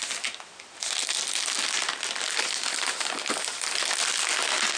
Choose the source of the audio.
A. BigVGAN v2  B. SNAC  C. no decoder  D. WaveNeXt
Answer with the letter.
C